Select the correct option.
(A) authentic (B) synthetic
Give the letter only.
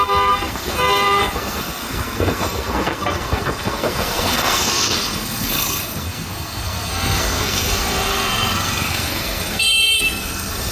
B